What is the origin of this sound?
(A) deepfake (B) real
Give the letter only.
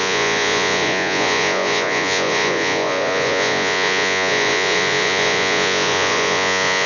A